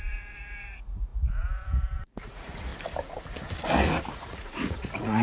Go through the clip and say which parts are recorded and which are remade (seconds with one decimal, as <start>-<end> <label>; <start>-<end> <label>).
0.0-2.7 remade; 2.7-4.1 recorded; 4.1-5.2 remade